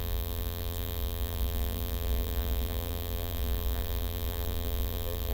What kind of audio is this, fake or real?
fake